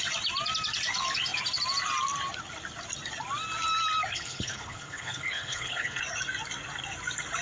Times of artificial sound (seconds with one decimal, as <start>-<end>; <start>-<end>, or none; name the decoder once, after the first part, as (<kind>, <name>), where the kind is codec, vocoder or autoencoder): 4.1-6.0 (codec, HILCodec)